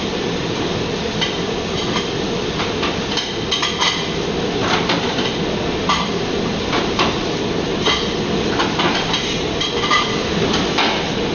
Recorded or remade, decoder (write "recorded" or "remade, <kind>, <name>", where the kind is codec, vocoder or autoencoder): recorded